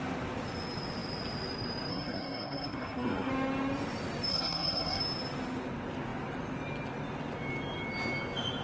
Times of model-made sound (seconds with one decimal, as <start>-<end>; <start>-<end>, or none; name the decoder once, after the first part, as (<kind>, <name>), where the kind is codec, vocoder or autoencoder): 1.9-3.3 (codec, SNAC); 4.3-5.0